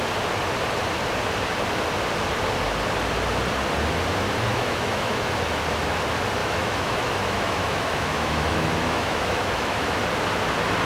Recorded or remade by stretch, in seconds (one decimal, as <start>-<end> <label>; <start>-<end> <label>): 0.0-4.5 recorded; 4.5-5.3 remade; 5.3-6.4 recorded; 6.4-10.0 remade; 10.0-10.8 recorded